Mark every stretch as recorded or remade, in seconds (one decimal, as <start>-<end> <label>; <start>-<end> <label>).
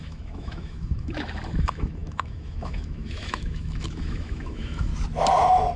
0.0-4.9 remade; 4.9-5.8 recorded